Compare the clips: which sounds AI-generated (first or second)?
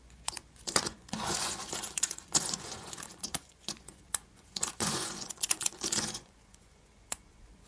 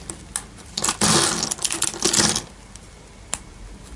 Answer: first